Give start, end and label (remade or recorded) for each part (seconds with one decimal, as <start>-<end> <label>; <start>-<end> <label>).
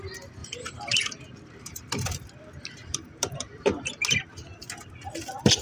0.0-0.4 recorded; 0.4-1.9 remade; 1.9-2.8 recorded; 2.8-3.9 remade; 3.9-5.6 recorded